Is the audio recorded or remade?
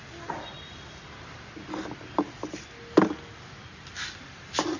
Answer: recorded